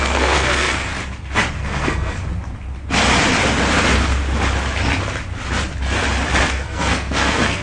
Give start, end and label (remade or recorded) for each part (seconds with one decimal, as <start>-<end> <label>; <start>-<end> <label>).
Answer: 0.0-0.9 remade; 0.9-1.5 recorded; 1.5-2.2 remade; 2.2-6.5 recorded; 6.5-7.6 remade